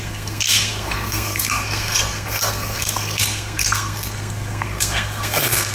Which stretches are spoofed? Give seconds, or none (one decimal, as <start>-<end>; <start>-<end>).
0.0-5.7